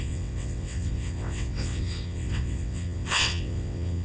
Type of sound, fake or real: fake